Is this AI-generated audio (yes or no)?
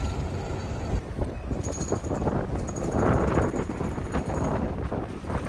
no